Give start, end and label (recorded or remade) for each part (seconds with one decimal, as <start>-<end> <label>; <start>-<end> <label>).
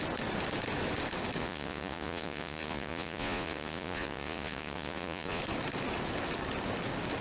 0.0-1.4 recorded; 1.4-5.4 remade; 5.4-7.2 recorded